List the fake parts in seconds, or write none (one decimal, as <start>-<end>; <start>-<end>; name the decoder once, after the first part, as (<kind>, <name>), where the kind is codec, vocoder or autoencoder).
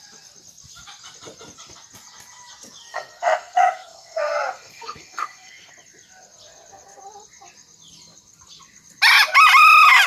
2.9-5.7 (codec, SNAC)